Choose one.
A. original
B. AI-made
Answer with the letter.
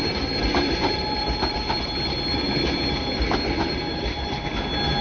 A